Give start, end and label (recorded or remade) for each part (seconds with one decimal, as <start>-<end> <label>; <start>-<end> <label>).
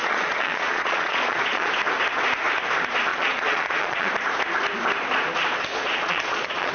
0.0-1.7 remade; 1.7-3.1 recorded; 3.1-4.1 remade; 4.1-5.7 recorded; 5.7-6.7 remade